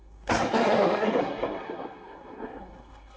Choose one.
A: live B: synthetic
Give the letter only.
B